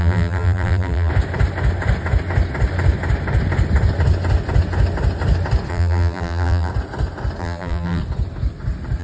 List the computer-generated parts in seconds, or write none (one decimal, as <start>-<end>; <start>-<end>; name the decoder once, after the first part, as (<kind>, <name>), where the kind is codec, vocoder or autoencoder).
0.0-1.1 (vocoder, BigVGAN v2); 5.7-6.7; 7.4-8.0